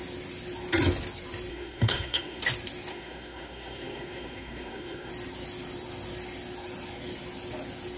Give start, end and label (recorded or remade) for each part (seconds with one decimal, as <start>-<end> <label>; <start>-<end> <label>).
0.0-1.5 recorded; 1.5-2.4 remade; 2.4-2.9 recorded; 2.9-5.1 remade; 5.1-8.0 recorded